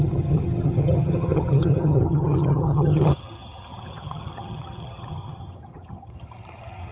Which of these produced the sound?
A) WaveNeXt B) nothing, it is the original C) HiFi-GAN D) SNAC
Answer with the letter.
C